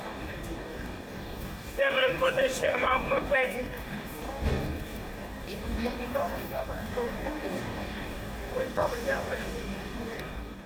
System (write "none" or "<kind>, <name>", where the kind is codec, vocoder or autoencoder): codec, DAC